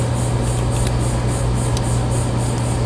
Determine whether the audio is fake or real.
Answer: real